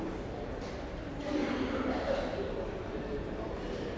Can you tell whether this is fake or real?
fake